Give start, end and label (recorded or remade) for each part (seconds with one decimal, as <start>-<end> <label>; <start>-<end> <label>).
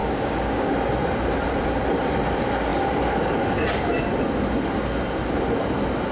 0.0-0.7 remade; 0.7-6.1 recorded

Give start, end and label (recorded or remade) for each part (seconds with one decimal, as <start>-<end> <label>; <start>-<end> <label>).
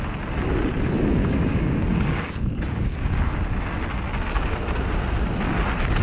0.0-1.2 recorded; 1.2-3.3 remade; 3.3-6.0 recorded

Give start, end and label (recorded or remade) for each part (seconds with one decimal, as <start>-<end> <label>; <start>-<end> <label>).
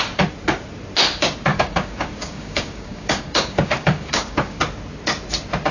0.0-1.5 recorded; 1.5-4.6 remade; 4.6-5.7 recorded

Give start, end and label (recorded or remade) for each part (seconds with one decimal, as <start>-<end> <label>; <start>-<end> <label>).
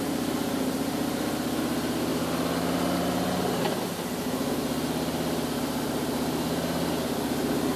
0.0-7.8 recorded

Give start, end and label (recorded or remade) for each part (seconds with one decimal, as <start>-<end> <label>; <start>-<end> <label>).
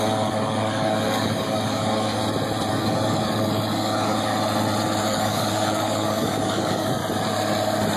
0.0-2.2 remade; 2.2-2.7 recorded; 2.7-4.3 remade; 4.3-5.0 recorded; 5.0-7.0 remade; 7.0-8.0 recorded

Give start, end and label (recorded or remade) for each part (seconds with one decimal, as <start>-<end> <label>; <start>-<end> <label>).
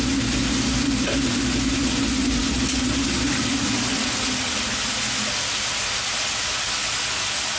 0.0-7.6 recorded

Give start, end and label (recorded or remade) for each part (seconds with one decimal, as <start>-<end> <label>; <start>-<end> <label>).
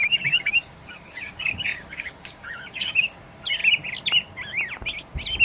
0.0-3.2 remade; 3.2-5.4 recorded